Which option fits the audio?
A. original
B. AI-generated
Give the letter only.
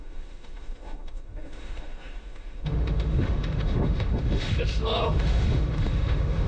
B